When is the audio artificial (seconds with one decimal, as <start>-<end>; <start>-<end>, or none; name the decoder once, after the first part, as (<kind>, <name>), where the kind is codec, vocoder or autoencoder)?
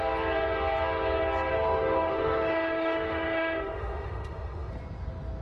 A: 1.5-4.7 (autoencoder, DAC-VAE)